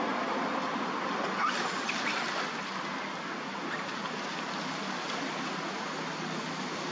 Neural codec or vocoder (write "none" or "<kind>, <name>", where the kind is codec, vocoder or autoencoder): none